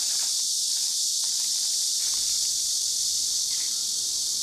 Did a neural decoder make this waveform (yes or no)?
yes